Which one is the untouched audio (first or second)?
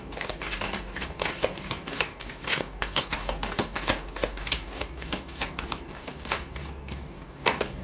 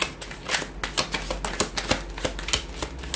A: second